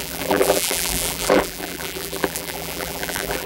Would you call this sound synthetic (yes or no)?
yes